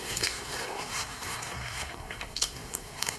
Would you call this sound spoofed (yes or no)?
yes